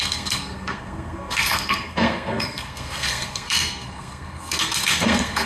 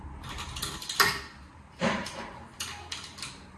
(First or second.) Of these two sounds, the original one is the second